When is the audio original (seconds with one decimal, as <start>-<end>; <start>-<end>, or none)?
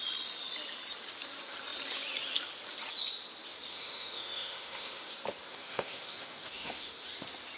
0.0-3.7; 5.1-5.5; 6.9-7.6